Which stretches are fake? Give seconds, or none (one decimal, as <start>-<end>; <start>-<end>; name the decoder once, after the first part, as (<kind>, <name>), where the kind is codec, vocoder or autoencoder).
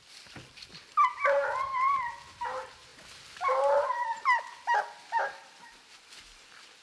none